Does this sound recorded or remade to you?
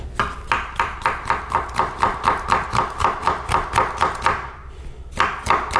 recorded